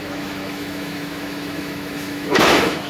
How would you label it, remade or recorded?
remade